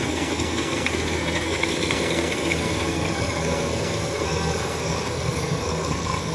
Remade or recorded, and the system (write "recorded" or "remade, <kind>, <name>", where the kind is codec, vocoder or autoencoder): remade, codec, SNAC